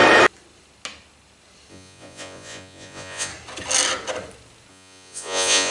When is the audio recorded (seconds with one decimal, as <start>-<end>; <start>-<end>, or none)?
0.0-1.7; 3.3-4.7

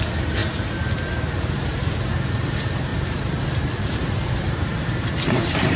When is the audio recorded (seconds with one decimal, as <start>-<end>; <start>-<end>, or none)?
0.4-1.5; 2.9-3.8